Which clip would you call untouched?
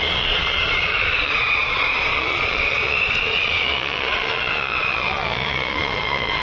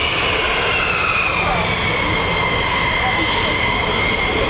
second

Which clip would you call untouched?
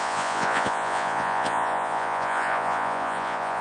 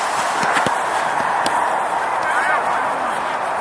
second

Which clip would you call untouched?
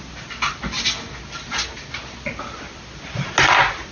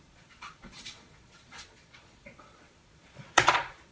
first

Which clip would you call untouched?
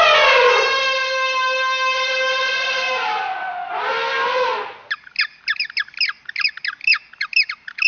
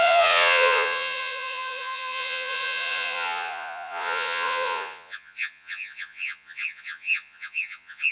first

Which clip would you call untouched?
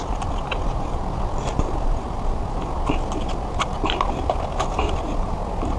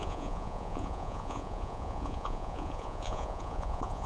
first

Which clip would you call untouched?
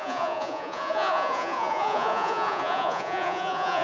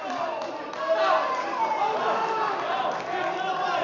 second